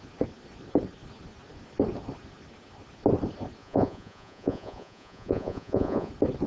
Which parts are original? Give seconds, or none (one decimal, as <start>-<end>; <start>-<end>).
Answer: 0.0-3.6; 6.1-6.5